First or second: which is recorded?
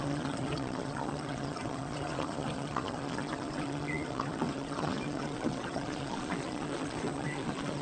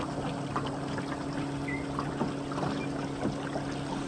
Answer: second